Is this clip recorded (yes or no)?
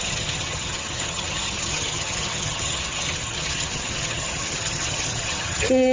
no